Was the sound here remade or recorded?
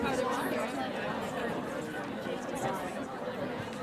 recorded